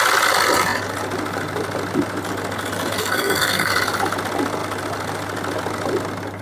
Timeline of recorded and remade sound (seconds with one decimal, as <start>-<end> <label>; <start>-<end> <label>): 0.0-3.0 recorded; 3.0-3.7 remade; 3.7-6.4 recorded